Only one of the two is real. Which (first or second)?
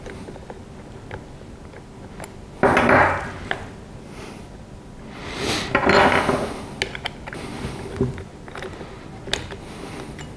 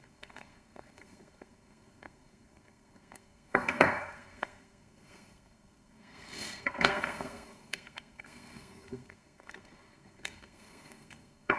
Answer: first